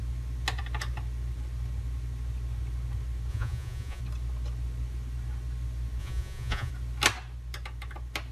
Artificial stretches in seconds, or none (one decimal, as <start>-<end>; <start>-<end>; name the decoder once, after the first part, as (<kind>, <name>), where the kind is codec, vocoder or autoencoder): 3.3-4.0 (vocoder, Vocos); 6.0-6.7